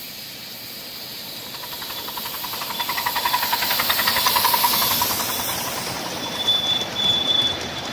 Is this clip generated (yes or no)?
no